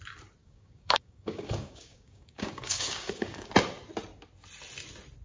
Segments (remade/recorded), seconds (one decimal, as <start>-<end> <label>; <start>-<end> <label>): 0.0-0.4 recorded; 0.4-3.5 remade; 3.5-5.2 recorded

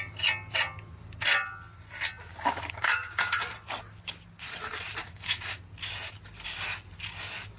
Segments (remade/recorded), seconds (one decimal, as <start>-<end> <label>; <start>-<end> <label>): 0.0-2.3 recorded; 2.3-3.5 remade; 3.5-5.0 recorded; 5.0-5.6 remade; 5.6-7.6 recorded